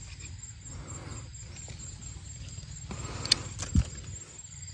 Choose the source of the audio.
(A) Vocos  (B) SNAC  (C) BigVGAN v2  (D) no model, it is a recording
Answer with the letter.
D